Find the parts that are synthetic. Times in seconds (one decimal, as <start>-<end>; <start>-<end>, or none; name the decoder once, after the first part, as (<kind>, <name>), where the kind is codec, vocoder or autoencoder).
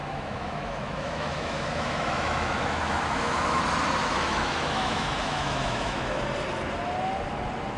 0.0-3.6 (autoencoder, DAC-VAE); 4.0-6.2